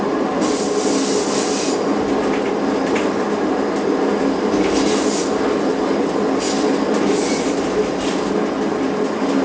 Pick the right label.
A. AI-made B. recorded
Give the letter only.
B